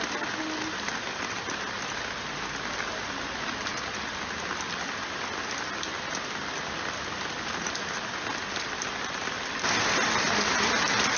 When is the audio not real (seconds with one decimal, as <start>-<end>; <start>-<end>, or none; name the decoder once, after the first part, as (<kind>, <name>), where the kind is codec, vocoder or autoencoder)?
none